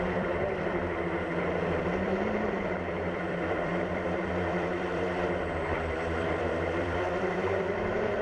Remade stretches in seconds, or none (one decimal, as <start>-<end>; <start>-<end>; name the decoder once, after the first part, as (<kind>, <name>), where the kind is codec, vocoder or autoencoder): 0.0-0.8 (vocoder, BigVGAN v2); 1.8-8.2